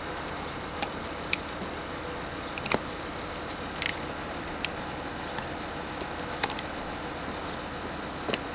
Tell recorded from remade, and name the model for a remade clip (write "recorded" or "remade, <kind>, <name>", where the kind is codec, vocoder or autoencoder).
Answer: recorded